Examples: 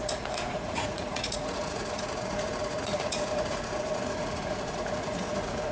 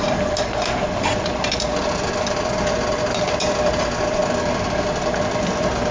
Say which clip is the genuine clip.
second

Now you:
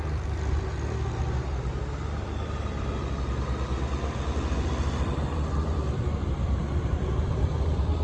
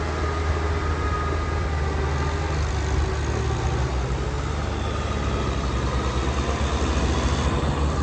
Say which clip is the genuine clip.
second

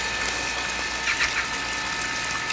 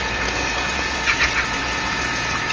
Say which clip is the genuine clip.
first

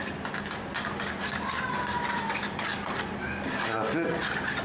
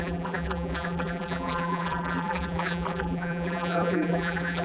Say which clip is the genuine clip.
first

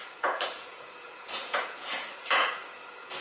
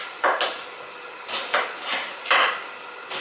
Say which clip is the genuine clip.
second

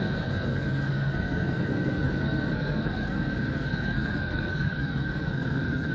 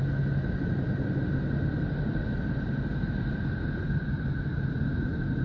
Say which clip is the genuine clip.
second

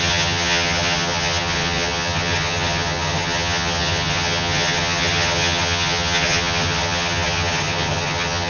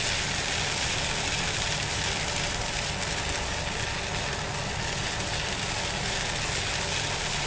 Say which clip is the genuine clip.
second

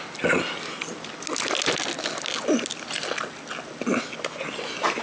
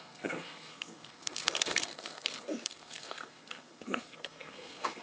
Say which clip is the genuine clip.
first